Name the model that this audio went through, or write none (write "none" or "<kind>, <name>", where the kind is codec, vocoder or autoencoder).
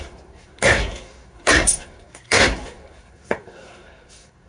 codec, SNAC